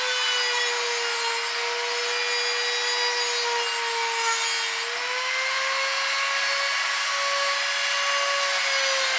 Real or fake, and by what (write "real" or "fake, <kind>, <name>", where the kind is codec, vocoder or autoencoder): real